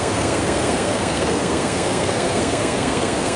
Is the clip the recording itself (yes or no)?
no